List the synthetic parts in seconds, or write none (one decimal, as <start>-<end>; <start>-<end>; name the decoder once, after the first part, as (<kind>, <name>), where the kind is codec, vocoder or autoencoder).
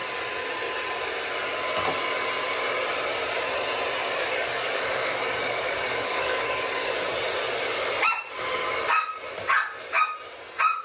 4.0-6.9 (codec, DAC)